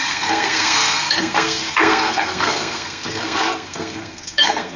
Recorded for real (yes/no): no